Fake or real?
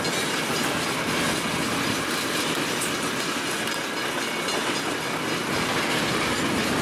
real